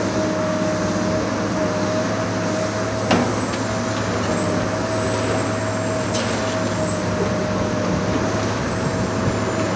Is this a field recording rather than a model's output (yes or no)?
yes